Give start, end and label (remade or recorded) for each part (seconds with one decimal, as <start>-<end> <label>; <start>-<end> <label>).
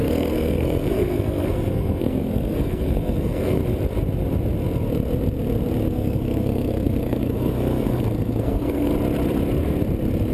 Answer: 0.0-3.6 remade; 3.6-5.9 recorded; 5.9-8.9 remade; 8.9-10.3 recorded